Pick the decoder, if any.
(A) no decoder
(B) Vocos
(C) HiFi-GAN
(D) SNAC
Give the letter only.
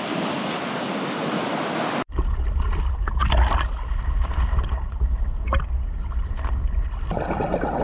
A